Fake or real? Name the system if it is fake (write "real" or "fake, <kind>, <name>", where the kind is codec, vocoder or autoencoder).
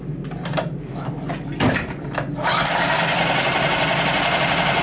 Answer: real